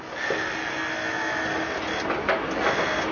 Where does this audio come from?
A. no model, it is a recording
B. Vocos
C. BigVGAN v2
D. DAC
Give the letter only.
A